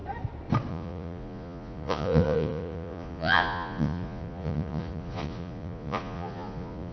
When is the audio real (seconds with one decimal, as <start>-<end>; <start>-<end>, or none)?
0.0-0.7